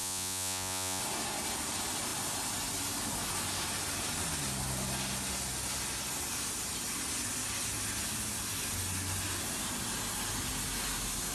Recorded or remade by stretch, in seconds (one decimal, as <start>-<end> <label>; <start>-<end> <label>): 0.0-1.0 remade; 1.0-11.3 recorded